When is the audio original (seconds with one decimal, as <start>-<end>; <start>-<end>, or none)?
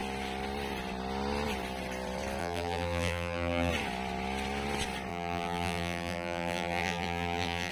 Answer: 0.0-2.4; 3.7-5.1